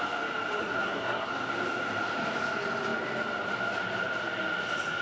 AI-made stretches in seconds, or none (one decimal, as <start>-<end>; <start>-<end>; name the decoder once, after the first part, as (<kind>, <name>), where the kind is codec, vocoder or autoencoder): 0.6-1.3 (codec, SNAC)